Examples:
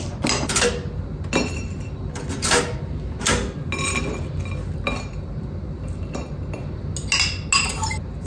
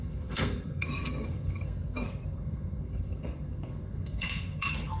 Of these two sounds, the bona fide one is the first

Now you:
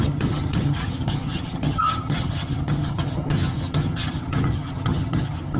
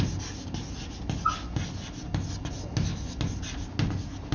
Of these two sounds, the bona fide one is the second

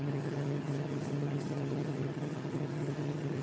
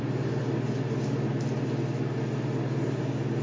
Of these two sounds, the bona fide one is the second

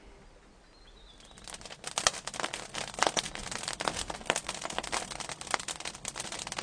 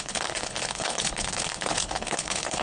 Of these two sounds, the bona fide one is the first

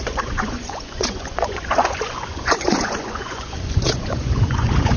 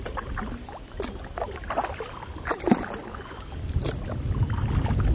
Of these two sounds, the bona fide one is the second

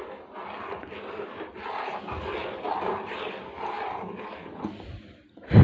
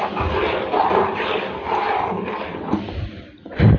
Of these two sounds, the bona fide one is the first